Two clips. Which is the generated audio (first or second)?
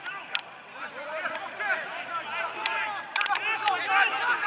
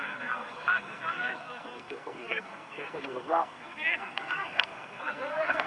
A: second